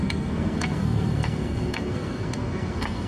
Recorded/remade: remade